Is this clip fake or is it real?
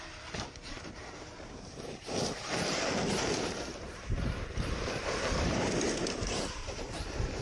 fake